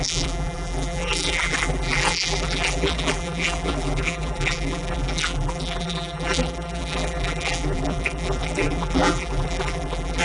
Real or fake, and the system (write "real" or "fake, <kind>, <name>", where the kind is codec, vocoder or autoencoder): fake, vocoder, BigVGAN v2